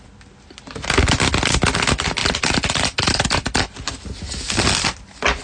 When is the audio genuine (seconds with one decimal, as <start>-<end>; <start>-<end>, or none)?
0.0-2.2; 3.1-5.4